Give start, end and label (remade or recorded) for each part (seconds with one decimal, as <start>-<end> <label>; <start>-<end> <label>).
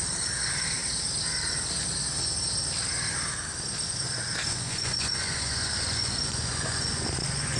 0.0-4.5 recorded; 4.5-7.6 remade